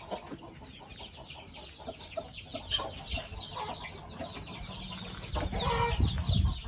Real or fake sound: real